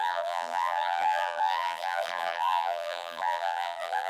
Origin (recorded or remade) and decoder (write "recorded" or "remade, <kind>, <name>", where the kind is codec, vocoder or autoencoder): remade, vocoder, BigVGAN v2